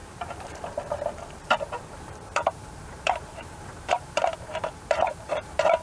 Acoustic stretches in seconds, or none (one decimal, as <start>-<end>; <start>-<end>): none